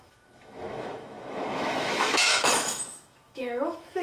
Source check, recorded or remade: remade